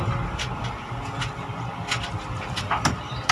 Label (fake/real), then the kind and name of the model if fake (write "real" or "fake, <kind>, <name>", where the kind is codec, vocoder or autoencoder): real